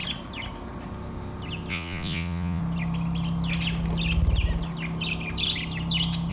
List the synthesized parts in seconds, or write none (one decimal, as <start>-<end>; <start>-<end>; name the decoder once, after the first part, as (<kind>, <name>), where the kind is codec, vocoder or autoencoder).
1.7-2.6 (vocoder, Vocos)